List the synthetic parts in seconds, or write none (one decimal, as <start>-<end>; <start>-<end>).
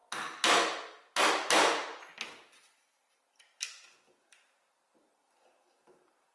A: none